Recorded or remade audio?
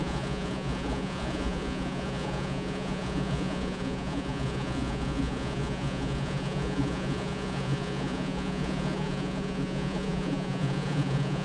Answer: remade